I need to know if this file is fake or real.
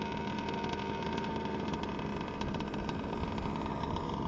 real